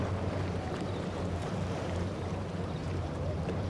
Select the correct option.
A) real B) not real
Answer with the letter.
B